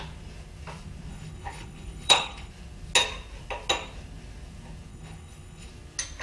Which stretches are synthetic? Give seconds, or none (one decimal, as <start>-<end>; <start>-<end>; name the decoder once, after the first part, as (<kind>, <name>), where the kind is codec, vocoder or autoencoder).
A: 1.1-2.5 (codec, HILCodec); 4.9-5.7